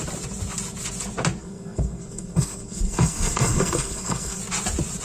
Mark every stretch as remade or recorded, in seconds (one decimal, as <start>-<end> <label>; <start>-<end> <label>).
0.0-1.4 recorded; 1.4-4.4 remade; 4.4-5.0 recorded